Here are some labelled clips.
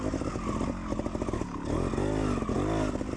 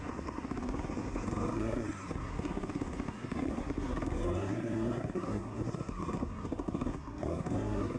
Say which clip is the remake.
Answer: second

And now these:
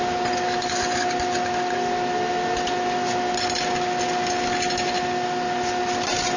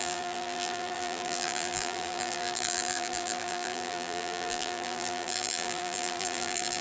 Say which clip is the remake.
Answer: second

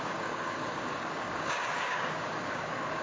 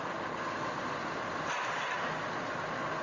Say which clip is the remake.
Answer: first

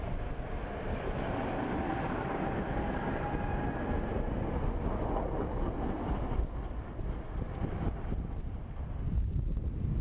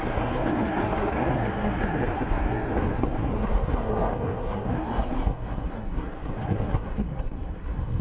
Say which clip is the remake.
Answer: second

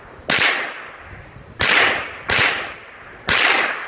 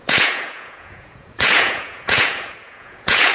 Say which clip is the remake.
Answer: second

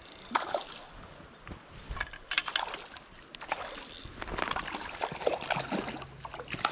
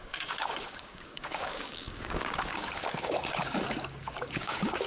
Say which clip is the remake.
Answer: second